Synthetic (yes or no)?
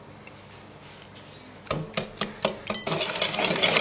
no